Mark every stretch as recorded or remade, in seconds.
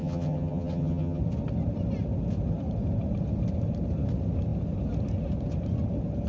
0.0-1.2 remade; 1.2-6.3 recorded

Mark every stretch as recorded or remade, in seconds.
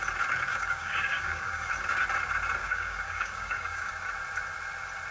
0.0-0.5 recorded; 0.5-1.7 remade; 1.7-2.6 recorded; 2.6-3.9 remade; 3.9-5.1 recorded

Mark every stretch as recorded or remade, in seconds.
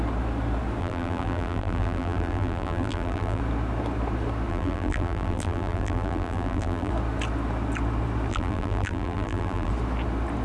0.0-0.8 recorded; 0.8-3.4 remade; 3.4-4.5 recorded; 4.5-6.9 remade; 6.9-8.3 recorded; 8.3-9.7 remade; 9.7-10.4 recorded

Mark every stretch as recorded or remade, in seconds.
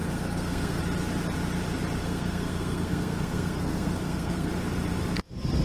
0.0-0.8 remade; 0.8-2.0 recorded; 2.0-4.5 remade; 4.5-5.6 recorded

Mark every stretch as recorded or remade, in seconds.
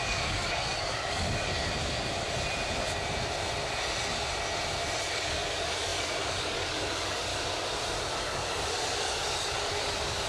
0.0-1.5 remade; 1.5-5.0 recorded; 5.0-7.3 remade; 7.3-8.2 recorded; 8.2-10.3 remade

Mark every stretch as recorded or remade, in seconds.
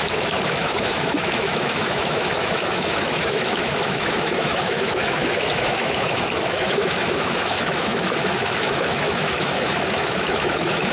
0.0-10.9 remade